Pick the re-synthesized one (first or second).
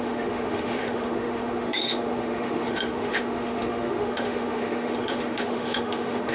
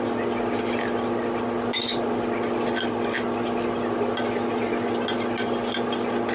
first